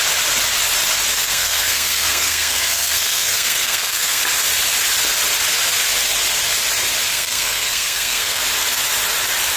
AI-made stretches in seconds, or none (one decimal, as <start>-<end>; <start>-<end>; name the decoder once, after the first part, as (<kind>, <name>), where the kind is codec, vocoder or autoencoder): 1.1-4.2 (codec, SNAC); 7.1-8.4